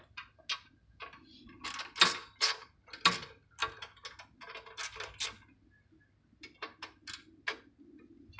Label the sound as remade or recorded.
recorded